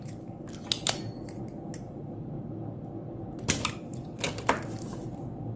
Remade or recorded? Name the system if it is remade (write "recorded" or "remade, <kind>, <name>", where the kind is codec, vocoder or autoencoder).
recorded